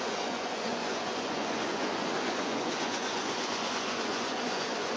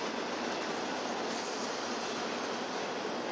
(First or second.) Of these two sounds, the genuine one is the second